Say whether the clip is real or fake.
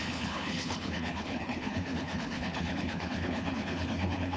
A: fake